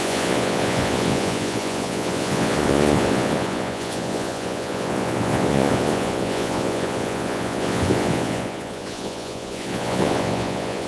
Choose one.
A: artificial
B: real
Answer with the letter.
A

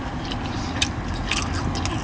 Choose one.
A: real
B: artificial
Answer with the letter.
A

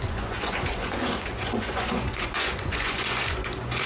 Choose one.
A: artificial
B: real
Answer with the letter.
A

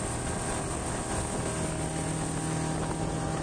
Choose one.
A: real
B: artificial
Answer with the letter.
A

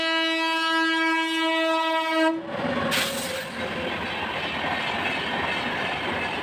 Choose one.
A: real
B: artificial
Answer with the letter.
A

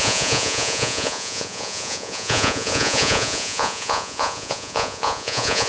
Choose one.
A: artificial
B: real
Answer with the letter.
A